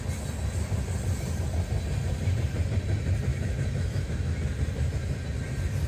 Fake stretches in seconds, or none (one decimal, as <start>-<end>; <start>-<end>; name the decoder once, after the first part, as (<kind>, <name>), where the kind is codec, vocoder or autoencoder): 3.3-4.3 (autoencoder, DAC-VAE)